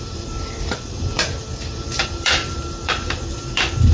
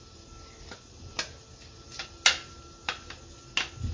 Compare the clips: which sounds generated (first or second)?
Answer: first